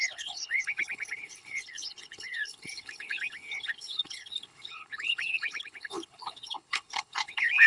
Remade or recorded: remade